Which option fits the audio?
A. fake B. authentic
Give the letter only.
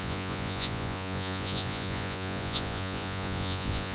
A